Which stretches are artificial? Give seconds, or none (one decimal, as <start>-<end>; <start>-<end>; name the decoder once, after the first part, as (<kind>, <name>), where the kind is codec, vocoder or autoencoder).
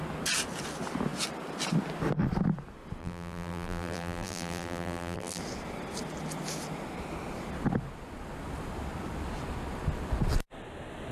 3.0-5.4 (vocoder, BigVGAN v2)